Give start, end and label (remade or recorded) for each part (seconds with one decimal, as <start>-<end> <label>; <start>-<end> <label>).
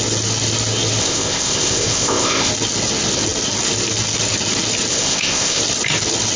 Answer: 0.0-1.0 recorded; 1.0-2.5 remade; 2.5-4.9 recorded; 4.9-5.6 remade; 5.6-6.4 recorded